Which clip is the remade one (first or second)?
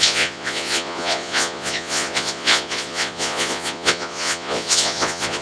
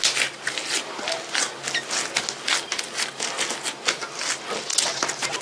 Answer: first